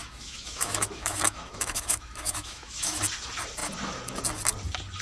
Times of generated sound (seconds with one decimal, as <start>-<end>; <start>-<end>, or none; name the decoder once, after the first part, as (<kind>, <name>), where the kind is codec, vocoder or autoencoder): 0.0-3.0 (autoencoder, DAC-VAE)